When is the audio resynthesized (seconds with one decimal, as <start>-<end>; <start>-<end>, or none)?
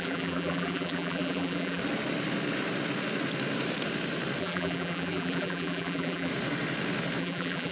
0.0-1.8; 4.4-6.3; 7.2-7.7